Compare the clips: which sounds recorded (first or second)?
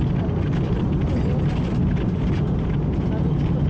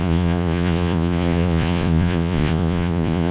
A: first